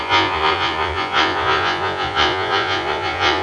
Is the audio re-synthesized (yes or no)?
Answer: yes